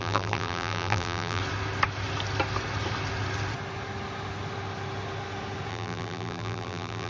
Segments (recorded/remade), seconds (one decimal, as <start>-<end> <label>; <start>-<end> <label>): 0.0-1.4 remade; 1.4-5.7 recorded; 5.7-7.1 remade